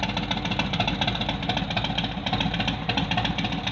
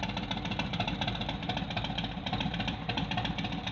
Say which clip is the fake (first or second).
second